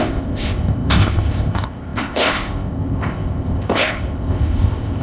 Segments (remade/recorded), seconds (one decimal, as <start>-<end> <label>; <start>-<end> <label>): 0.0-5.0 remade